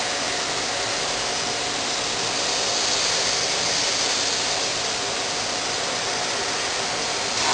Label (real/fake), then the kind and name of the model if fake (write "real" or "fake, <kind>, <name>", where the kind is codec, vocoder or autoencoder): real